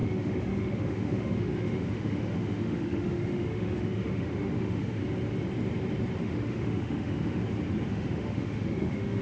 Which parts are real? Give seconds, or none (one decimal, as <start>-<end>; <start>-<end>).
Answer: 5.0-6.2; 7.4-7.9